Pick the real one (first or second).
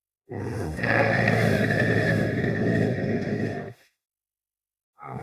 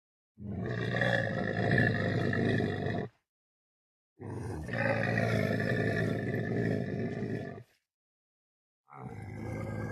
second